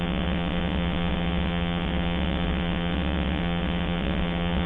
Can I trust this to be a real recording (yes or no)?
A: no